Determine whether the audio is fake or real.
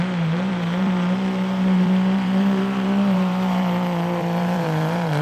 fake